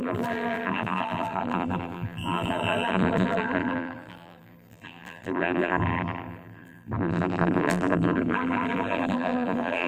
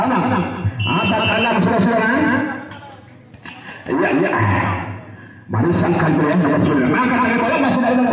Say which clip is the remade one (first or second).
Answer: first